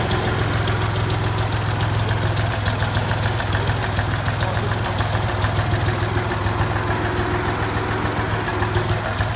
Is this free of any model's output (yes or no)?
yes